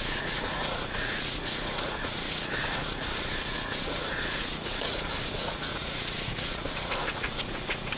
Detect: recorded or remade remade